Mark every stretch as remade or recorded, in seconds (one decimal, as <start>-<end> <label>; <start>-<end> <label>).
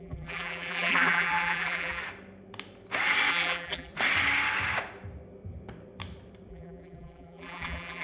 0.0-2.0 remade; 2.0-3.3 recorded; 3.3-3.9 remade; 3.9-6.5 recorded; 6.5-8.0 remade